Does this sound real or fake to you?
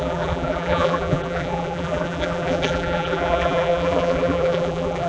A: fake